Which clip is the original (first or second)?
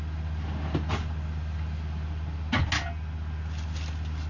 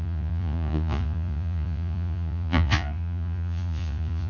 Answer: first